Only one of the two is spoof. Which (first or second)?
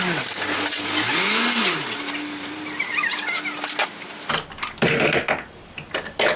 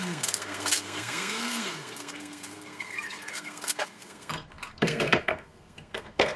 second